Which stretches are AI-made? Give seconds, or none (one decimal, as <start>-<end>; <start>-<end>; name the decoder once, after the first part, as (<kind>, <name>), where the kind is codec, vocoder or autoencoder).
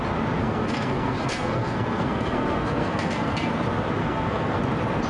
0.4-3.5 (codec, SNAC); 4.0-4.6